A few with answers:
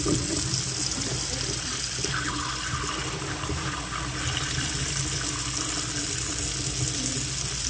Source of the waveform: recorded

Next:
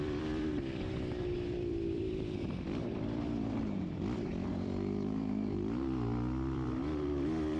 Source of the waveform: remade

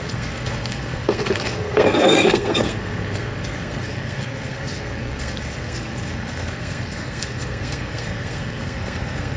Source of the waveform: remade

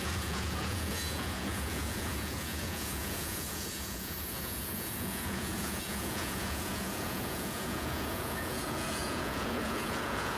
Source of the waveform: remade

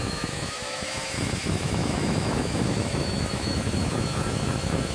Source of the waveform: remade